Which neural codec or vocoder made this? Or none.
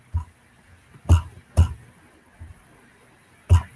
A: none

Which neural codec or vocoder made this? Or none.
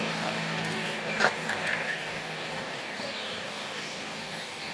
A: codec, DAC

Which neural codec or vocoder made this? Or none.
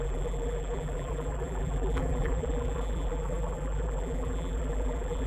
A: vocoder, BigVGAN v2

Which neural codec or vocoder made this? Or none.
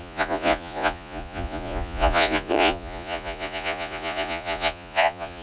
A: vocoder, Vocos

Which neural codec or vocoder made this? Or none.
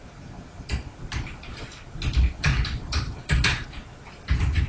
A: none